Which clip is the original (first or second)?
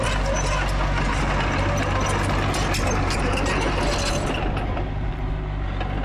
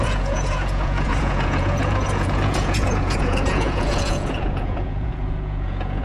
first